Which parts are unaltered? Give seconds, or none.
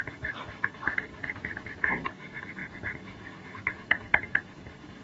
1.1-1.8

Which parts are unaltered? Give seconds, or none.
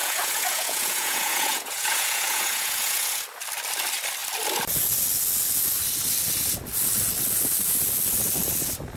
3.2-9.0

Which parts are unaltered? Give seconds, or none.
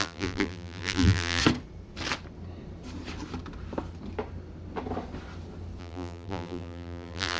1.4-5.8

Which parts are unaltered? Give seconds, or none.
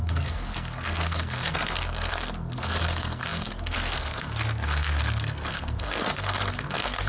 none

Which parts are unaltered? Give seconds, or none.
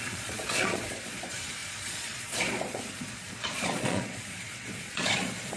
none